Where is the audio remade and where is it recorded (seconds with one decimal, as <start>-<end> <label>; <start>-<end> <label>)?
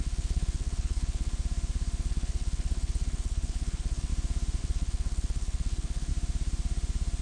0.0-1.3 remade; 1.3-2.1 recorded; 2.1-4.1 remade; 4.1-4.6 recorded; 4.6-6.1 remade; 6.1-7.2 recorded